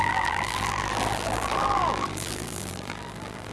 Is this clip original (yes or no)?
no